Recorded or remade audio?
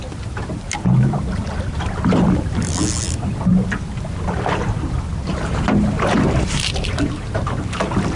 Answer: recorded